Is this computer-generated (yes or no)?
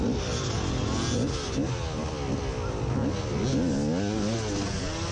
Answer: no